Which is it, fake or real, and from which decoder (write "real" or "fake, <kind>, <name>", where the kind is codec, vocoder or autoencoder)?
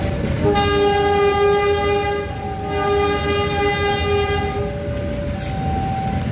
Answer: real